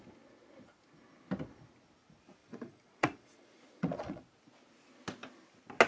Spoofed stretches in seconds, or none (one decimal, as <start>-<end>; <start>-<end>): 2.4-4.2